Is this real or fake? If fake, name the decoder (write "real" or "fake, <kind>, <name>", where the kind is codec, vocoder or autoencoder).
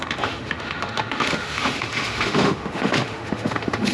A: fake, autoencoder, DAC-VAE